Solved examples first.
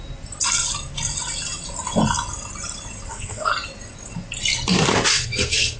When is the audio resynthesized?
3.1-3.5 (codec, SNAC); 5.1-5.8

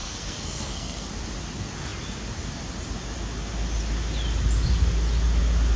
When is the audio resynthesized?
0.0-1.1 (codec, SNAC)

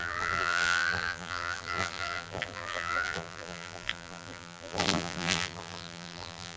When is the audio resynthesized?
0.0-6.6 (vocoder, BigVGAN v2)

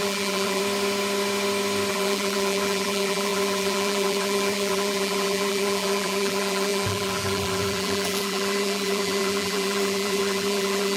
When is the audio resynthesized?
0.0-0.6 (vocoder, BigVGAN v2); 1.9-11.0

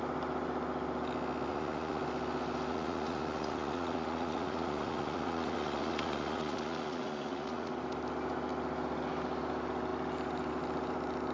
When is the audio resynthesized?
1.5-2.0 (vocoder, Vocos); 2.7-7.7

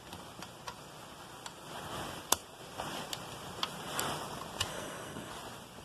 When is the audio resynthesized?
4.7-5.3 (codec, SNAC)

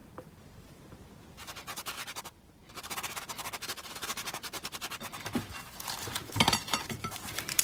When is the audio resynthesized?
0.6-7.6 (vocoder, BigVGAN v2)

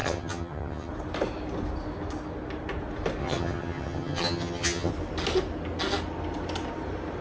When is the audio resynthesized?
0.0-0.9 (vocoder, HiFi-GAN); 3.2-4.9